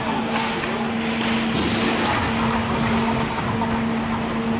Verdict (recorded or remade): recorded